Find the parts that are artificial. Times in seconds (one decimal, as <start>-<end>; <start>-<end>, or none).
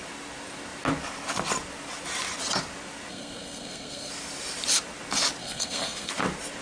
3.1-4.1; 5.4-6.1